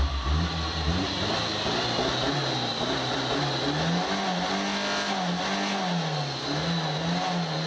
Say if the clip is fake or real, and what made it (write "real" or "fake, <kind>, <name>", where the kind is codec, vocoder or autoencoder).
real